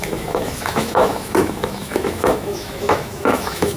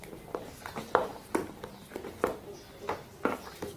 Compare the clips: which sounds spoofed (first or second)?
first